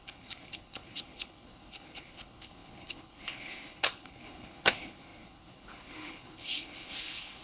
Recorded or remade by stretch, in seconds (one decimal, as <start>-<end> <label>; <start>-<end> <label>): 0.0-7.4 remade